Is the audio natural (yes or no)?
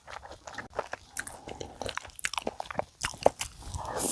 yes